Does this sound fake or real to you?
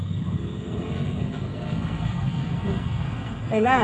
fake